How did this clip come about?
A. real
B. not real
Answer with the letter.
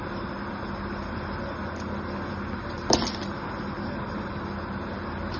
A